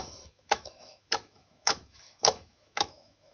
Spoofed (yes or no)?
yes